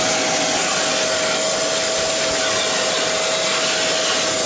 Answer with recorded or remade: recorded